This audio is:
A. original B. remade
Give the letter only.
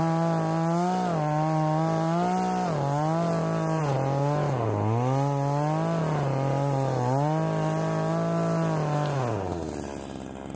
A